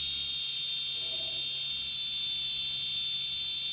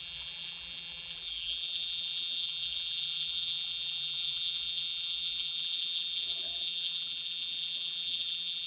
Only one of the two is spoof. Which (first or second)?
second